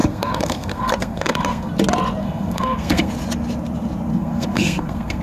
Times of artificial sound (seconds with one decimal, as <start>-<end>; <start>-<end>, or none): 0.0-1.7; 2.2-3.1; 4.1-5.2